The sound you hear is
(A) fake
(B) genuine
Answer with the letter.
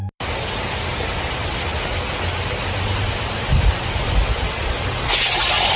B